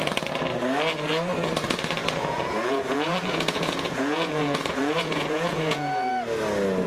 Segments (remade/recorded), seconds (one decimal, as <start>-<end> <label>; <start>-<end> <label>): 0.0-2.0 recorded; 2.0-6.1 remade; 6.1-6.9 recorded